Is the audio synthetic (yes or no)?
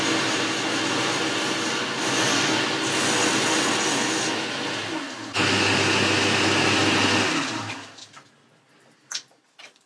no